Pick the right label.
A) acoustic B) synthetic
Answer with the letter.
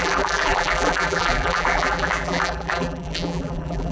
B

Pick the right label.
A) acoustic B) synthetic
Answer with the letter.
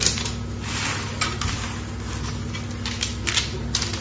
A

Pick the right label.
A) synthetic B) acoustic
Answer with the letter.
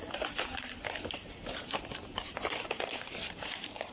A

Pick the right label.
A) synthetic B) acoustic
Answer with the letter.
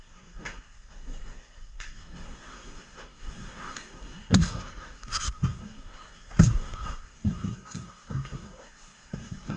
A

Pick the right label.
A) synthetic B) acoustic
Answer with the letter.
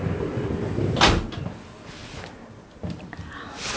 B